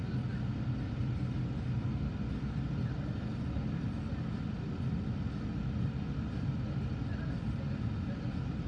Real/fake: real